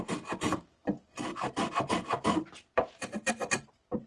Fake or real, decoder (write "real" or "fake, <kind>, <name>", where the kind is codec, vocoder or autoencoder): real